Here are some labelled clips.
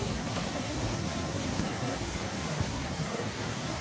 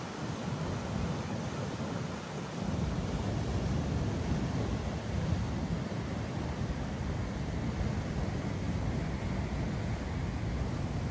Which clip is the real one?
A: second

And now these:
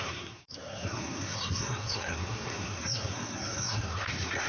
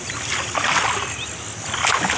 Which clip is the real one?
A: second